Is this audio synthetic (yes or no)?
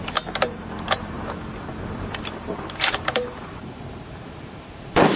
yes